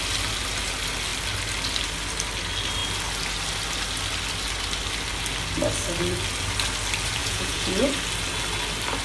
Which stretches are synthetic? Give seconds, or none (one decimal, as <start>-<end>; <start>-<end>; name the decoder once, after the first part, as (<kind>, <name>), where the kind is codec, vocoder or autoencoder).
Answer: 7.2-8.0 (vocoder, Vocos)